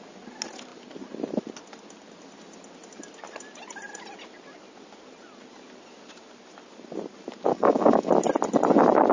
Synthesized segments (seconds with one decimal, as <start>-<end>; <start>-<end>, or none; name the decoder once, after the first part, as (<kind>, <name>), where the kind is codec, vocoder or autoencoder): 7.5-8.1 (codec, DAC)

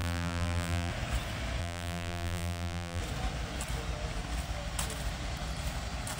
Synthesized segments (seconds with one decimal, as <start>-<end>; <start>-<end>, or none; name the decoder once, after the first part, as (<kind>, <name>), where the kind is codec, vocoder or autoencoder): 0.0-0.9 (vocoder, BigVGAN v2); 1.6-3.0

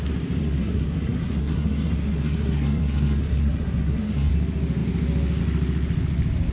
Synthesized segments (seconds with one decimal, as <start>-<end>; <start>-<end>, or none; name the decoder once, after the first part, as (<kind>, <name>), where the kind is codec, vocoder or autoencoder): 0.4-4.3 (codec, SNAC)

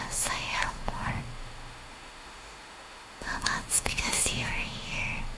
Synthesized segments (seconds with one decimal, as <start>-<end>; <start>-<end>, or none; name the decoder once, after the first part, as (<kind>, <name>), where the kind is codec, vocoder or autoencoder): 0.0-5.4 (autoencoder, DAC-VAE)